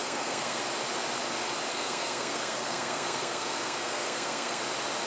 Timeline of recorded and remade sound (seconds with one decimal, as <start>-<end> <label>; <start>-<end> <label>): 0.0-0.6 remade; 0.6-1.7 recorded; 1.7-4.6 remade; 4.6-5.1 recorded